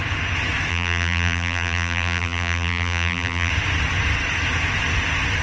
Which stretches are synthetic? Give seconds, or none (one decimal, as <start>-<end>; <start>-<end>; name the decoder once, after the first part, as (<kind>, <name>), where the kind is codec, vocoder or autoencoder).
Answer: 0.7-3.5 (vocoder, BigVGAN v2)